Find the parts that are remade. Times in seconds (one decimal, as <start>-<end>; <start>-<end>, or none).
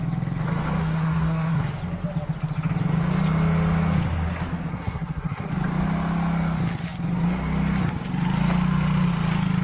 0.8-1.6; 4.7-5.5